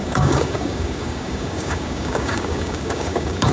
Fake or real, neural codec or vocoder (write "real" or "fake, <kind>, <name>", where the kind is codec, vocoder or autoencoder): fake, codec, DAC